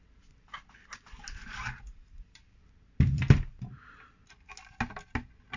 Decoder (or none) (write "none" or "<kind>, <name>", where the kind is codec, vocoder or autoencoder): none